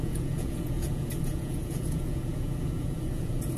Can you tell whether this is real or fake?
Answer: fake